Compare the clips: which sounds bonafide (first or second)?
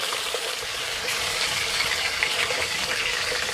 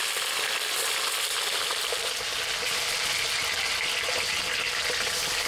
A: second